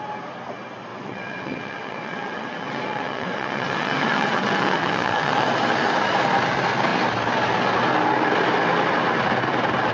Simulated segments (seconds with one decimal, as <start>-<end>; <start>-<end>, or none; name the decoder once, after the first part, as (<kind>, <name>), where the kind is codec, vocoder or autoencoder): 0.9-5.5 (vocoder, WaveNeXt)